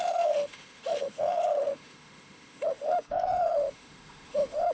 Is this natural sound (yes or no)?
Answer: no